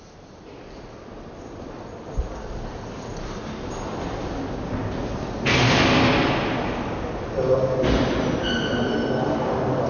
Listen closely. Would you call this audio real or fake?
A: real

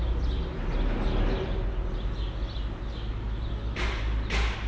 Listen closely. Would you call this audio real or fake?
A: real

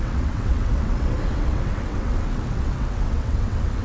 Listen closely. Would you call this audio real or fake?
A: fake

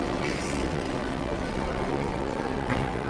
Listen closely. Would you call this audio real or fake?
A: fake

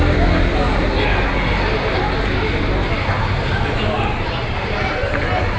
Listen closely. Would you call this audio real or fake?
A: real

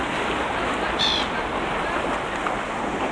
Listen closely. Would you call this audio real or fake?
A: real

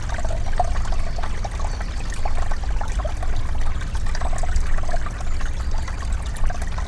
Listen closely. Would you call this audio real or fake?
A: real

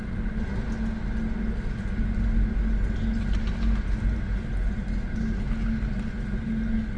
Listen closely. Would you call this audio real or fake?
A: real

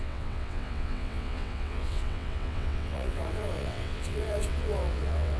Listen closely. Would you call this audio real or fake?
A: fake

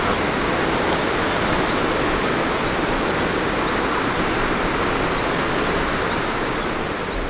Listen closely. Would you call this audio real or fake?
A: real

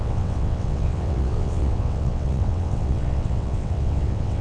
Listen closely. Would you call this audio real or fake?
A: fake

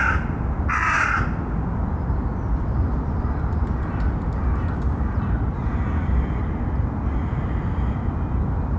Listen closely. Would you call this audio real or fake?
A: real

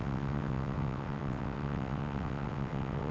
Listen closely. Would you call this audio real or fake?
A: fake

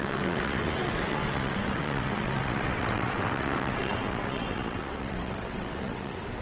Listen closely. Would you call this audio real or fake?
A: fake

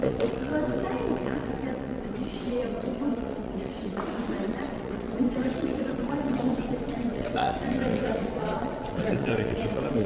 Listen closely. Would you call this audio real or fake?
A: fake